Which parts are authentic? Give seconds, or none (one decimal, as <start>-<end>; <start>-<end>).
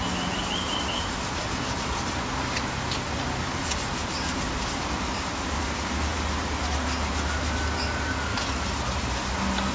0.0-9.7